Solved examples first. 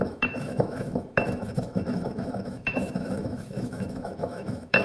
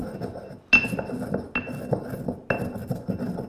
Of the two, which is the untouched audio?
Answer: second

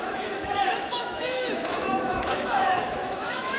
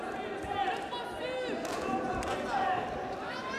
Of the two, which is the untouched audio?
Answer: second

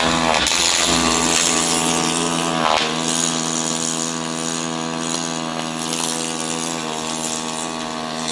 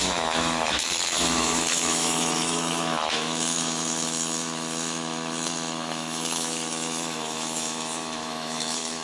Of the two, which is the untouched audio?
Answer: first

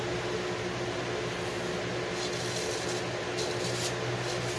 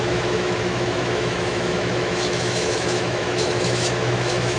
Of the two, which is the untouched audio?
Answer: first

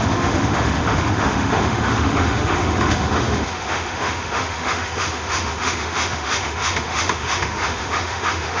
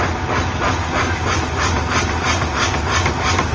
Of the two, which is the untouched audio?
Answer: second